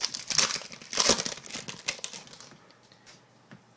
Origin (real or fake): real